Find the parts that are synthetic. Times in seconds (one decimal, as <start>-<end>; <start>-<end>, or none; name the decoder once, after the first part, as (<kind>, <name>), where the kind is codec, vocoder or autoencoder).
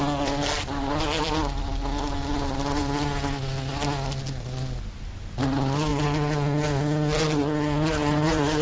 8.0-8.6 (vocoder, BigVGAN v2)